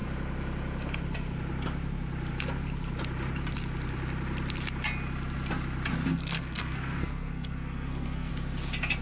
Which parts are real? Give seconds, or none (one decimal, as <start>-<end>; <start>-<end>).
0.0-6.1; 8.3-9.0